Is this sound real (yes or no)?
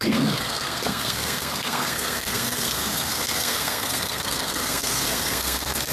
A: no